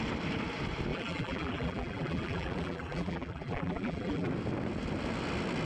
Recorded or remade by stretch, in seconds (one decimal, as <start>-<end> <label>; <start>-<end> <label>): 0.0-0.9 recorded; 0.9-4.3 remade; 4.3-5.6 recorded